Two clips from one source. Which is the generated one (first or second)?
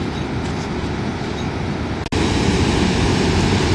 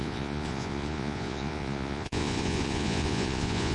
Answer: second